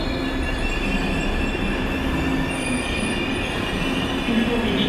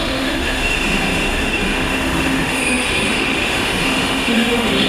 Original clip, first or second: first